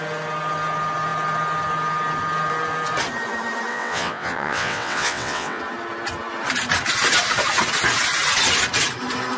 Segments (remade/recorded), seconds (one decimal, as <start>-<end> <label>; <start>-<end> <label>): 0.0-3.7 recorded; 3.7-5.6 remade; 5.6-9.4 recorded